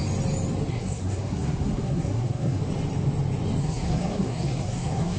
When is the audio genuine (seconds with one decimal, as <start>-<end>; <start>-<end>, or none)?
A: 0.0-0.7; 2.6-3.6